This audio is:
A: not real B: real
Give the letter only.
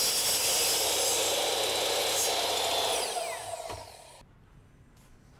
B